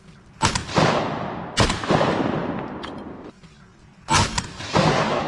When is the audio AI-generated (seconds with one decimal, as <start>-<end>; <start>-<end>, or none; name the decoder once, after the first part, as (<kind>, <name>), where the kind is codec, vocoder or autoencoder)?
none